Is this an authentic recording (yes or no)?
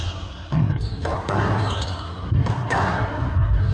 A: no